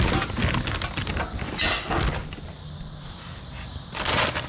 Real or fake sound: real